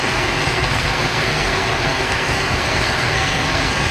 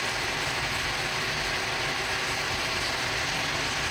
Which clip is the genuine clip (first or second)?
second